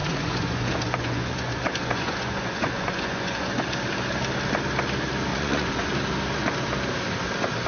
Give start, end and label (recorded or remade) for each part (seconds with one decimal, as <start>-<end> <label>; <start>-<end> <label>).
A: 0.0-3.6 remade; 3.6-5.3 recorded; 5.3-5.9 remade; 5.9-7.7 recorded